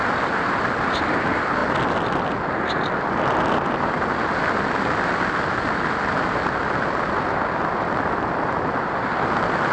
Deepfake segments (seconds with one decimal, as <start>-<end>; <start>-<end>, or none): none